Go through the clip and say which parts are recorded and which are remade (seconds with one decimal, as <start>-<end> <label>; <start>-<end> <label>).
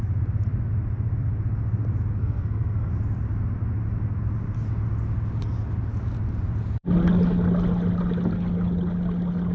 0.0-2.2 recorded; 2.2-2.9 remade; 2.9-9.5 recorded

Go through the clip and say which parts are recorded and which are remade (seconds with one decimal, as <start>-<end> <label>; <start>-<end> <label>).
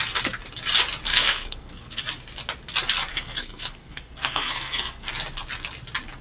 0.0-1.1 recorded; 1.1-2.0 remade; 2.0-3.1 recorded; 3.1-5.1 remade; 5.1-6.2 recorded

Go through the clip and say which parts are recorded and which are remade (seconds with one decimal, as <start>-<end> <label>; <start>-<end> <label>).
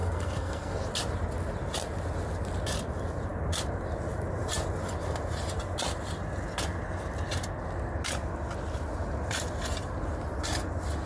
0.0-0.8 remade; 0.8-11.1 recorded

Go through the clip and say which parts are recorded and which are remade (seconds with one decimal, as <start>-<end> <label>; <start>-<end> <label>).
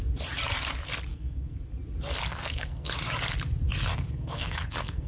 0.0-1.1 recorded; 1.1-1.6 remade; 1.6-2.3 recorded; 2.3-2.9 remade; 2.9-3.9 recorded; 3.9-5.1 remade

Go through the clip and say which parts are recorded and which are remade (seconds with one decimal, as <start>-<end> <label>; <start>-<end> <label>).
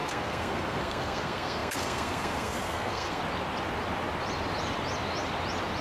0.0-3.2 remade; 3.2-5.8 recorded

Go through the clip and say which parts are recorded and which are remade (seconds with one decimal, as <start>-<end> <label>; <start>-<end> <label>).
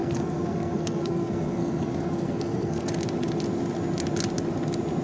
0.0-2.9 remade; 2.9-5.0 recorded